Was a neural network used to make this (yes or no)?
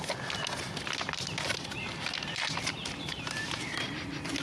no